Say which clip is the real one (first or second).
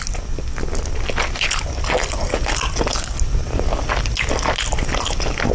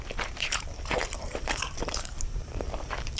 first